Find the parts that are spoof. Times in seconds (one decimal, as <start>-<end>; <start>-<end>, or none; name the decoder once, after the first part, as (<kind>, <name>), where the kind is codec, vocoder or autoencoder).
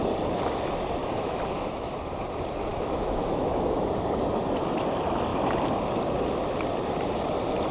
1.0-1.9 (autoencoder, DAC-VAE); 2.7-3.8